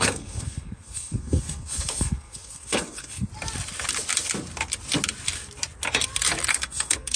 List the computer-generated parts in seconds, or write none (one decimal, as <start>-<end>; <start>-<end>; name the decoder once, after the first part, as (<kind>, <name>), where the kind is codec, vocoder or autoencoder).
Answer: 0.0-3.3 (codec, SNAC); 6.5-7.2